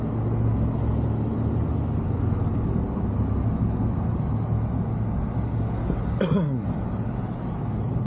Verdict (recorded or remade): recorded